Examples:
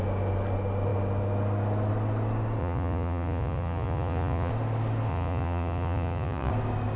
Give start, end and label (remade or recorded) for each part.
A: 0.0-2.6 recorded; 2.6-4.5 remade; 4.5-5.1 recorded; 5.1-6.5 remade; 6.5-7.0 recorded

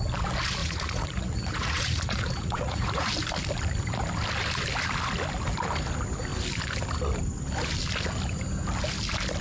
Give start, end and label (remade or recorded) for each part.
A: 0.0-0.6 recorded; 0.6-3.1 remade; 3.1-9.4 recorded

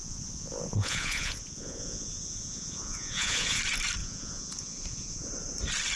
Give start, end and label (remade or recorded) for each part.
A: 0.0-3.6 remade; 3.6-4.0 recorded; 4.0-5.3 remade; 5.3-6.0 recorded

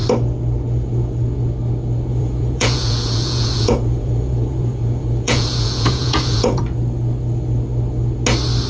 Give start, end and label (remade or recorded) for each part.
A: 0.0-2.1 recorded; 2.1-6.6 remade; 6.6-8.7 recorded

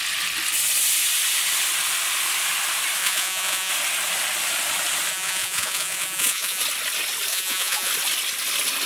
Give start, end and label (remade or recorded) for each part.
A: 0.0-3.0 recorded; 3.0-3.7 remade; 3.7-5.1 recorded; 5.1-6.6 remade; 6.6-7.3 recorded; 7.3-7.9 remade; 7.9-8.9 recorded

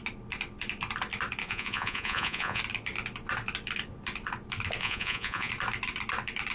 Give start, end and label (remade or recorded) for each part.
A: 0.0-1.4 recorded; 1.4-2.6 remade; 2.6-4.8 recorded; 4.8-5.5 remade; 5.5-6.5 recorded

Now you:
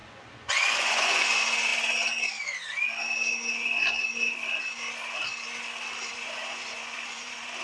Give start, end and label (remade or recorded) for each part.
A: 0.0-1.7 remade; 1.7-6.1 recorded; 6.1-7.6 remade

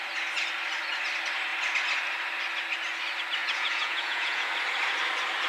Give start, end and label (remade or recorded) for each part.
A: 0.0-3.4 recorded; 3.4-4.5 remade; 4.5-5.5 recorded